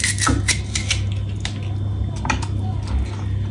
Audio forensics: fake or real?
real